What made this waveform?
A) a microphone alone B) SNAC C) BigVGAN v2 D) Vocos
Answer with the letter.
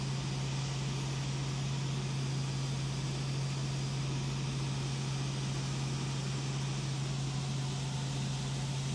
A